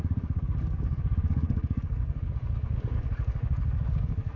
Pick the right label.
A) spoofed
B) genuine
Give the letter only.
A